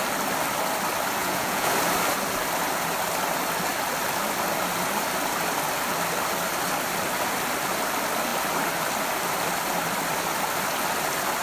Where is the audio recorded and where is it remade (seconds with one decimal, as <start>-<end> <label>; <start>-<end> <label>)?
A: 0.0-1.2 recorded; 1.2-1.7 remade; 1.7-11.4 recorded